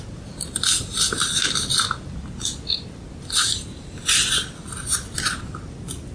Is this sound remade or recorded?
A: recorded